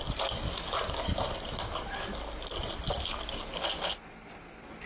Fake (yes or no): no